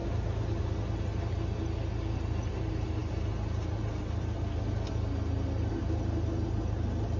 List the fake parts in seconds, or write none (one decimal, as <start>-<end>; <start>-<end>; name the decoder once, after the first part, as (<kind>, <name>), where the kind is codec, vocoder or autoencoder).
none